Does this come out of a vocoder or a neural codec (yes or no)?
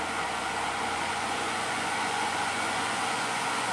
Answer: yes